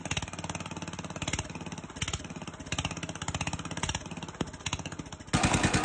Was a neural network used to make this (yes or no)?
no